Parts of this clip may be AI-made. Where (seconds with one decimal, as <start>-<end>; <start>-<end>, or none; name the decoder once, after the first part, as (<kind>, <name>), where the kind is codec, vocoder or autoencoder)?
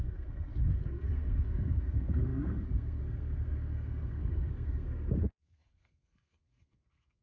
0.0-7.2 (codec, SNAC)